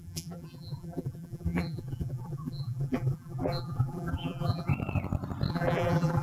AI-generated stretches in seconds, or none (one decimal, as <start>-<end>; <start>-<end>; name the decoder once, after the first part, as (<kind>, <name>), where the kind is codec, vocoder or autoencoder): 0.0-4.7 (vocoder, BigVGAN v2); 5.5-6.2